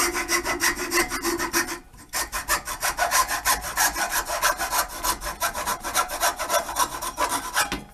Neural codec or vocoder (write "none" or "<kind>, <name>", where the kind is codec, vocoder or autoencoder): none